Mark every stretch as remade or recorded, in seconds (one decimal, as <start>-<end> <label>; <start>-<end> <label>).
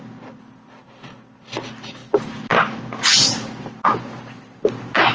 0.0-5.1 recorded